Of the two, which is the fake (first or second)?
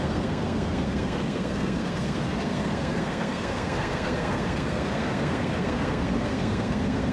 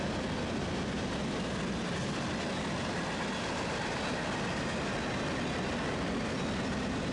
first